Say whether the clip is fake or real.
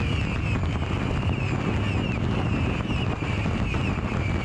real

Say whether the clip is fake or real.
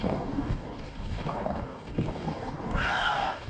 fake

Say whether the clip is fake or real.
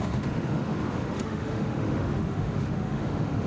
fake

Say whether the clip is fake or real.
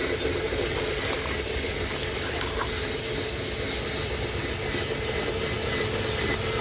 real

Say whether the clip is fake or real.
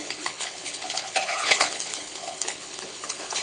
fake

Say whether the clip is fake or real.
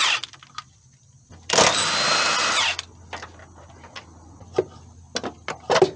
real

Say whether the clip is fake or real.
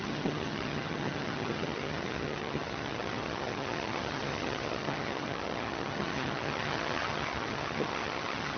fake